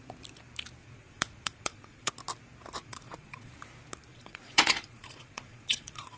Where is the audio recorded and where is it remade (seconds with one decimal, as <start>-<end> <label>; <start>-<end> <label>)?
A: 0.0-0.8 recorded; 0.8-2.1 remade; 2.1-2.8 recorded; 2.8-3.5 remade; 3.5-4.1 recorded; 4.1-6.2 remade